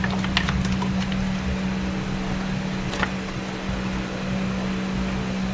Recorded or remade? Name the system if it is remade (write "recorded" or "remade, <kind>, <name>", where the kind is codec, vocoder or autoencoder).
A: recorded